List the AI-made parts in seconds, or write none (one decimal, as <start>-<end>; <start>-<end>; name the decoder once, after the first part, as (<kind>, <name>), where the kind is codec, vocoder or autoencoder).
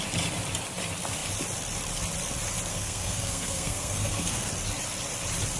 2.7-4.5 (codec, SNAC)